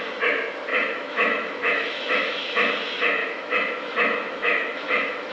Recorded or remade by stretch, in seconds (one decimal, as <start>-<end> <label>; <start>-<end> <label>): 0.0-0.7 recorded; 0.7-2.7 remade; 2.7-3.2 recorded; 3.2-5.3 remade